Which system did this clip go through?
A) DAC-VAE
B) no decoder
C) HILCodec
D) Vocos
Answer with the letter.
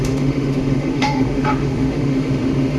A